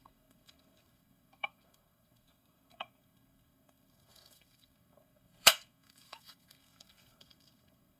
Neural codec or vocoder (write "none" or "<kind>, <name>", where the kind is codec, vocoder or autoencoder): codec, SNAC